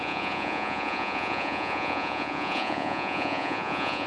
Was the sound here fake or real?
fake